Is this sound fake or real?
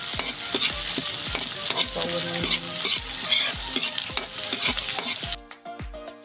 real